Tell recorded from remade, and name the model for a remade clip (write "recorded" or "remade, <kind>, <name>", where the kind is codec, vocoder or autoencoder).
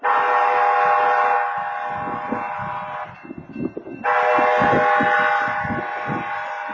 recorded